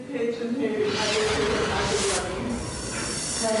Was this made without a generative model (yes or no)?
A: yes